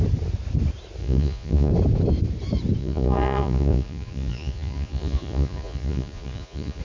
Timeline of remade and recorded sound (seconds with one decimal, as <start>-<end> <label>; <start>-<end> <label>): 0.0-1.0 recorded; 1.0-1.7 remade; 1.7-2.8 recorded; 2.8-6.8 remade